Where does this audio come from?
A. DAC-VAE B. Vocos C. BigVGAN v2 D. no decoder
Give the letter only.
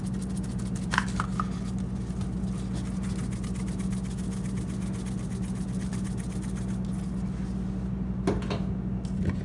D